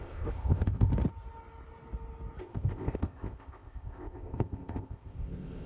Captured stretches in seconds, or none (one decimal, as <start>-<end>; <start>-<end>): 0.9-2.4